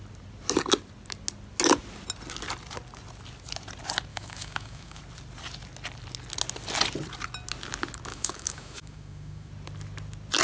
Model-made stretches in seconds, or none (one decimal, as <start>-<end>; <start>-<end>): 4.1-5.0; 8.1-9.5